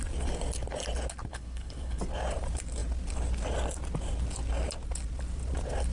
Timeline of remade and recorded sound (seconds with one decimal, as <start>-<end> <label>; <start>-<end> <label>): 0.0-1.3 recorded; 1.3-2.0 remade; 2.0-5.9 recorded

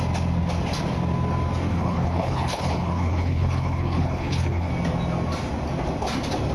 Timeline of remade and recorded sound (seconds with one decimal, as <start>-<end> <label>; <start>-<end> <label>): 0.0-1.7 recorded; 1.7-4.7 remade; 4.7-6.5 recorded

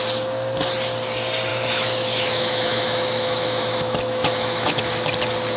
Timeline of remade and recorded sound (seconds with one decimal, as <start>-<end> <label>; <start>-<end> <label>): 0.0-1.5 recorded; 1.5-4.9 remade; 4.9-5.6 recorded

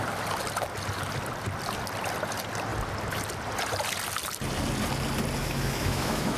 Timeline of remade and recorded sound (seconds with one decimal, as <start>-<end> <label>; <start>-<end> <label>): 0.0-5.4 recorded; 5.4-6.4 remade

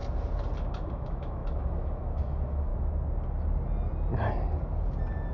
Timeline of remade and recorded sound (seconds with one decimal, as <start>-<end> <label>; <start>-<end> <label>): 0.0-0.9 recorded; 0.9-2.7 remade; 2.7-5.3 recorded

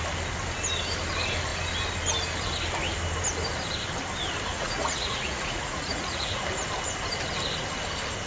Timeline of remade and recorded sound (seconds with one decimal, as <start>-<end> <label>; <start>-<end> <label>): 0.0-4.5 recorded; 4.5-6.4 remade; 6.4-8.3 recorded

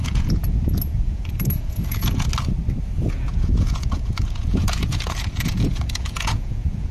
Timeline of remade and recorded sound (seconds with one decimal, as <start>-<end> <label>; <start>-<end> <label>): 0.0-2.3 remade; 2.3-3.1 recorded; 3.1-6.9 remade

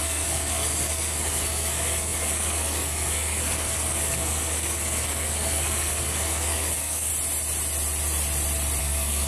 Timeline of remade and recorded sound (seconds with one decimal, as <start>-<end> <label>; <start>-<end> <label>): 0.0-7.1 remade; 7.1-8.8 recorded; 8.8-9.3 remade